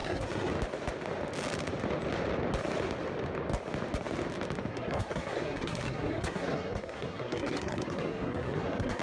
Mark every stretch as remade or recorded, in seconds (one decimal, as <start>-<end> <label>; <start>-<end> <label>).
0.0-0.5 remade; 0.5-4.7 recorded; 4.7-9.0 remade